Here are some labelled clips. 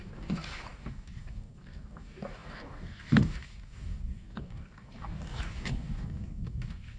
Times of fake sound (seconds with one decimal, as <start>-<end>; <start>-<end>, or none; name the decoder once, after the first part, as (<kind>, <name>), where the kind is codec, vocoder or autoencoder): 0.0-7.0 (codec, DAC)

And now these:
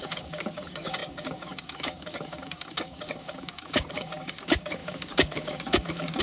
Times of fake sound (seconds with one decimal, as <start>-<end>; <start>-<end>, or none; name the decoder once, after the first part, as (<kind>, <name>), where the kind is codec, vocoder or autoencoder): 0.0-6.2 (codec, DAC)

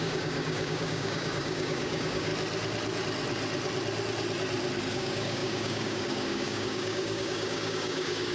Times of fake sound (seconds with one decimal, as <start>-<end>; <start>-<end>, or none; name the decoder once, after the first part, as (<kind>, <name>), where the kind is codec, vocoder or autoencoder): 0.0-2.3 (codec, DAC); 4.9-8.3